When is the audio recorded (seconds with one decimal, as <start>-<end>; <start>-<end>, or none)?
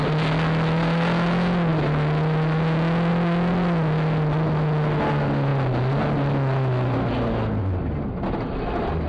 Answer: 0.0-9.1